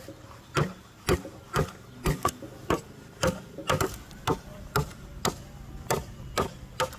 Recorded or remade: recorded